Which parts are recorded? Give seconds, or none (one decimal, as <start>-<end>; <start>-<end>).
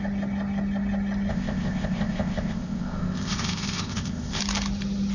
0.0-1.3; 4.4-5.1